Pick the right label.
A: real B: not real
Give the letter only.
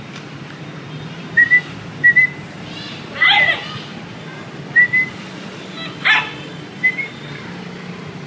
A